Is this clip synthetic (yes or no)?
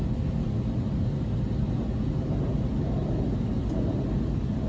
no